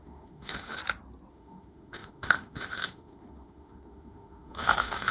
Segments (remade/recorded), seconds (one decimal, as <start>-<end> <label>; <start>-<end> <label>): 0.0-0.8 remade; 0.8-1.3 recorded; 1.3-5.1 remade